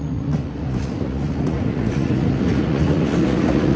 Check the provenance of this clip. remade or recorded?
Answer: remade